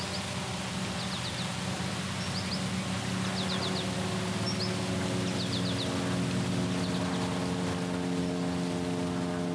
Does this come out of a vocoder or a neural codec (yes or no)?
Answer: no